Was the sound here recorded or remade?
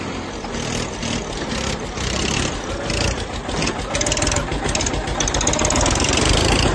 recorded